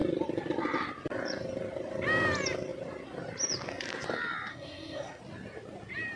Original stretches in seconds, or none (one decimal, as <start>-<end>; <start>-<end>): 0.0-4.5; 5.2-6.2